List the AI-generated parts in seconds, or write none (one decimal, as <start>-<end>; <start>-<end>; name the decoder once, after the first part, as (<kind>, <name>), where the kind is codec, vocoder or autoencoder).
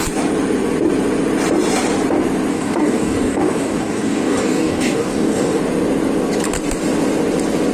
2.5-5.6 (codec, DAC)